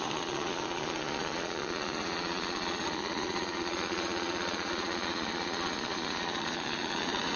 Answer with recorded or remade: remade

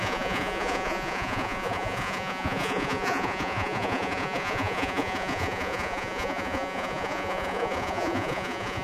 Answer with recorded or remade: remade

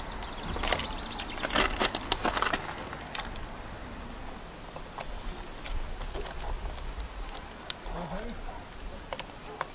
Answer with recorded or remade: recorded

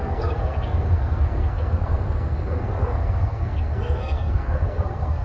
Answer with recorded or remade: remade